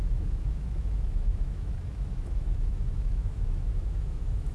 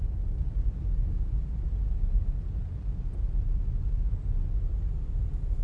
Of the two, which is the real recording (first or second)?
second